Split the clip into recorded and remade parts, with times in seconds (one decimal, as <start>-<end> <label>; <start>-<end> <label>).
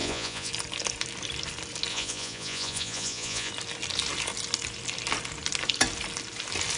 0.0-0.5 remade; 0.5-1.9 recorded; 1.9-3.5 remade; 3.5-6.8 recorded